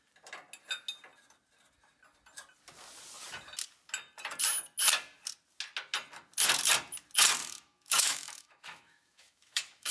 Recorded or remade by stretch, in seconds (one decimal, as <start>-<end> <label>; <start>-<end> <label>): 0.0-7.4 recorded; 7.4-9.9 remade